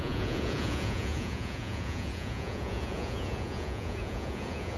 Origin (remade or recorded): remade